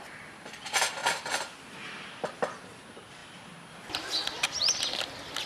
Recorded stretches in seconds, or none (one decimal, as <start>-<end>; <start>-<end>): 0.0-5.5

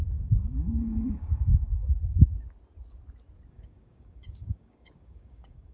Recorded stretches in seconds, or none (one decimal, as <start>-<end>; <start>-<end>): 1.5-3.5

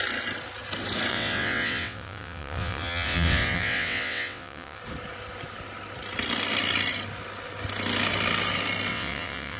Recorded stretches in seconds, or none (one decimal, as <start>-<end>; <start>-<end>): 0.0-1.1; 4.8-8.9